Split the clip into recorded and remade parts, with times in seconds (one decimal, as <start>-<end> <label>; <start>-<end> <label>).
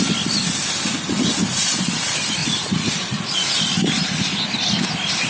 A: 0.0-2.4 recorded; 2.4-3.6 remade; 3.6-5.3 recorded